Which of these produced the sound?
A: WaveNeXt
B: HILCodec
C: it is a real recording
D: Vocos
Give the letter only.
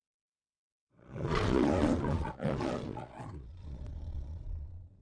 D